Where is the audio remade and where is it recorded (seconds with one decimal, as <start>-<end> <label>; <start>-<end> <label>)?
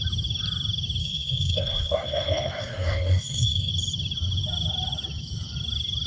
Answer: 0.0-1.0 recorded; 1.0-3.7 remade; 3.7-6.1 recorded